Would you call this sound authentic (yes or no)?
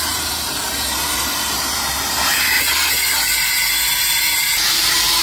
no